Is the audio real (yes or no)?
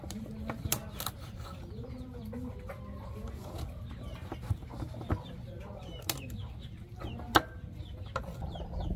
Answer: yes